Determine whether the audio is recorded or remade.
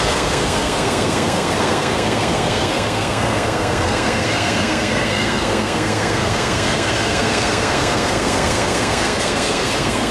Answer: remade